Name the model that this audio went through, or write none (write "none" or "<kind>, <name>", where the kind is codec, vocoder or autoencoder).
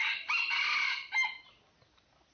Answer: none